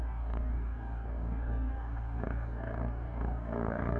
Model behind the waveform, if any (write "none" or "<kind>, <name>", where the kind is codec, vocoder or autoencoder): codec, DAC